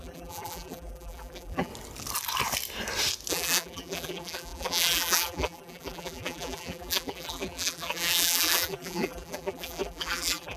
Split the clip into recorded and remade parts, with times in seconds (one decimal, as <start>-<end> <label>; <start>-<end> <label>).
0.0-1.7 remade; 1.7-3.3 recorded; 3.3-10.6 remade